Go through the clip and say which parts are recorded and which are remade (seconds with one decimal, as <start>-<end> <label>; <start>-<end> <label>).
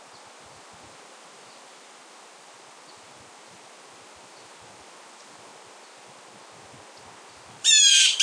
0.0-8.2 recorded